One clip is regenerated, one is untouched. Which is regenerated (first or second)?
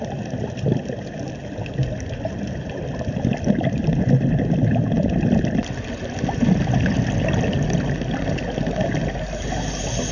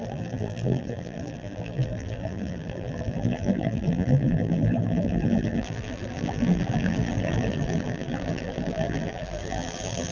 second